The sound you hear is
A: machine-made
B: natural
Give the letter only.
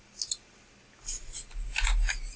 B